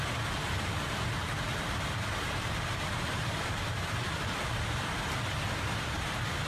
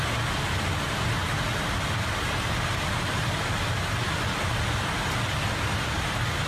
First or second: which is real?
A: second